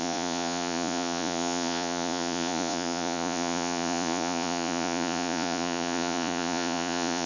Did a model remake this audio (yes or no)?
yes